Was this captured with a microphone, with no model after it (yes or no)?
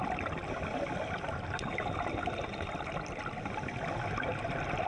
yes